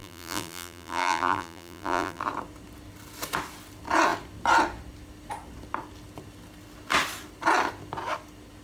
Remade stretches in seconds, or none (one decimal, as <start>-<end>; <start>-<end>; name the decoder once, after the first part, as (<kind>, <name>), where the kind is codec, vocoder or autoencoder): 0.0-2.2 (vocoder, BigVGAN v2)